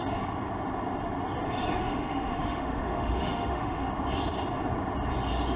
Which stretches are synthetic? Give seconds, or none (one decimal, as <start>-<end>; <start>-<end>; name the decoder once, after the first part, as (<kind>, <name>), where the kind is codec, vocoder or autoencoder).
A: 1.8-3.9 (autoencoder, DAC-VAE)